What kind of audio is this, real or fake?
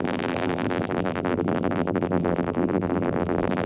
fake